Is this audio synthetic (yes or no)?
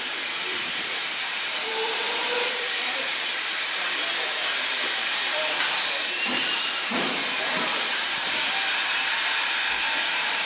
yes